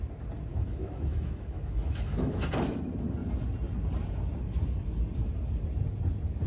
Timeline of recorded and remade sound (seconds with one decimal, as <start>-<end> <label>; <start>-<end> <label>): 0.0-0.5 recorded; 0.5-2.4 remade; 2.4-6.5 recorded